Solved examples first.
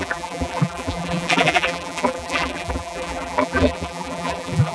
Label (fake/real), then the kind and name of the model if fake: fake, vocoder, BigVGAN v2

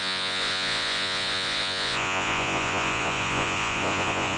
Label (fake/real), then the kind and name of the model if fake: fake, vocoder, Vocos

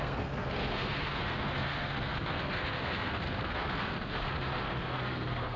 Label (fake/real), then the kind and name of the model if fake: fake, codec, SNAC